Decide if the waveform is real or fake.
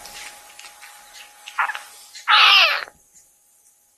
real